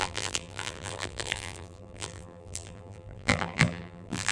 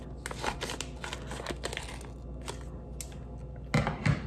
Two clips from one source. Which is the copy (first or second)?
first